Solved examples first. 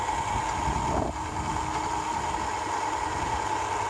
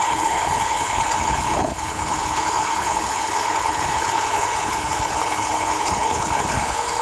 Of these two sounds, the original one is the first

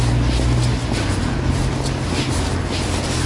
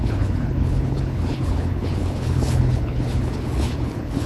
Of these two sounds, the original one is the first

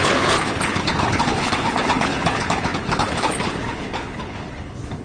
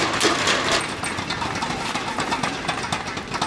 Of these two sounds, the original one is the second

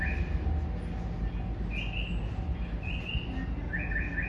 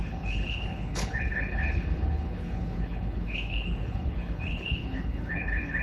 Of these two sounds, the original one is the first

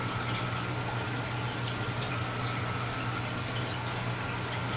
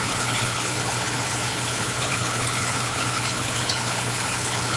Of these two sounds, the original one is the first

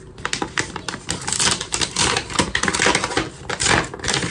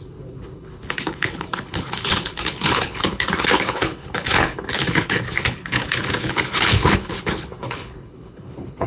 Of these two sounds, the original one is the first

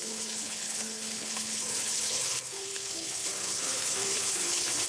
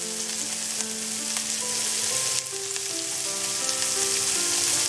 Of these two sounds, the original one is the second